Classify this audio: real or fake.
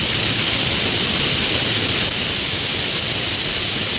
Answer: real